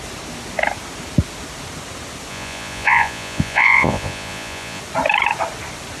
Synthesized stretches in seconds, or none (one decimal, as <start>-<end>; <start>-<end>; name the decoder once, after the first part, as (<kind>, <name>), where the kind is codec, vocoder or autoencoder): 2.3-4.8 (vocoder, Vocos)